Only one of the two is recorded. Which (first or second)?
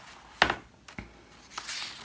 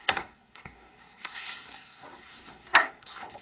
first